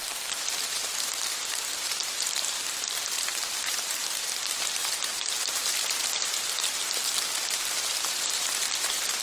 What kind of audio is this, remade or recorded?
remade